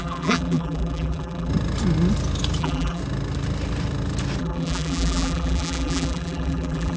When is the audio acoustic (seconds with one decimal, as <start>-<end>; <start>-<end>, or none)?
1.5-2.6; 3.0-4.4